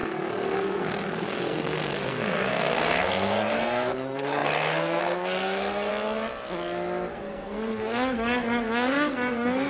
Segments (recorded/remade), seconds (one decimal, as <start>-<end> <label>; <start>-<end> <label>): 0.0-5.9 remade; 5.9-7.1 recorded; 7.1-9.7 remade